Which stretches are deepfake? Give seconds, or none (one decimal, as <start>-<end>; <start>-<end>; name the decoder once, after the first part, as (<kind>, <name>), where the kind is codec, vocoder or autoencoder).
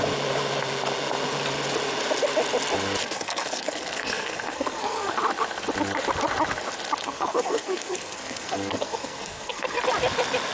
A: 3.0-5.1 (codec, SNAC); 7.0-9.8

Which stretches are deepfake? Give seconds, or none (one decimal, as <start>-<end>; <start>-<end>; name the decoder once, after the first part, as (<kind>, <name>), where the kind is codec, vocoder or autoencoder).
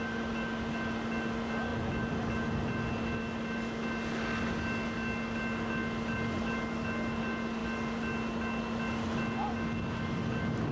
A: none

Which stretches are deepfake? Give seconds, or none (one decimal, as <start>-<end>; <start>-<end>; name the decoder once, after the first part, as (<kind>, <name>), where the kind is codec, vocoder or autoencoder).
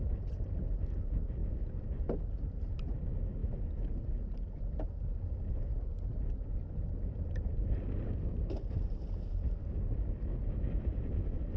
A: none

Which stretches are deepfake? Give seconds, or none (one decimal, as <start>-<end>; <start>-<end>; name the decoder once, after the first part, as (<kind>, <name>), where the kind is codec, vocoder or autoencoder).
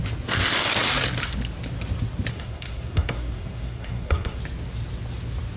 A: 2.3-4.4 (codec, SNAC)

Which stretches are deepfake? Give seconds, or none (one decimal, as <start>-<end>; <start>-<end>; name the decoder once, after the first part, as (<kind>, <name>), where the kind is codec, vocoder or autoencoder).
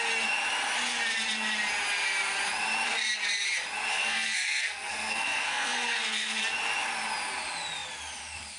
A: 3.9-6.4 (codec, SNAC)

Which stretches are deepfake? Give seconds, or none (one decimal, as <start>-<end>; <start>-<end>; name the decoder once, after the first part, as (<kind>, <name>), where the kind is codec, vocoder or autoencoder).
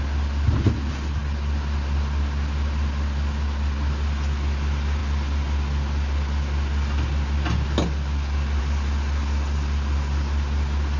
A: none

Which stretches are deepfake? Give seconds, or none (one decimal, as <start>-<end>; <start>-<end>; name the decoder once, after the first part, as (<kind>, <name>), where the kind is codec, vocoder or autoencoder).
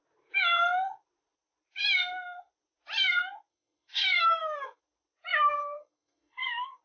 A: 3.5-4.8 (codec, SNAC); 5.6-6.8